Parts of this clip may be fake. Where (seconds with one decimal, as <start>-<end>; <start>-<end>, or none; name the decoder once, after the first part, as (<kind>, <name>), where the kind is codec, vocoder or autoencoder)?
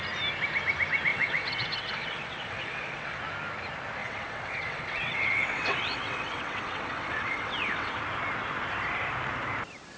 1.1-3.2 (vocoder, WaveNeXt); 4.0-8.0